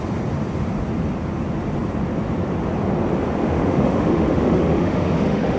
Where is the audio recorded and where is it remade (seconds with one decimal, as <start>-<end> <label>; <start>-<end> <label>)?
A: 0.0-3.4 recorded; 3.4-5.6 remade